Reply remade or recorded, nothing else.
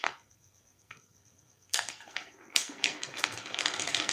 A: remade